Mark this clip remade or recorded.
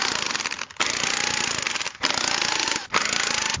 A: recorded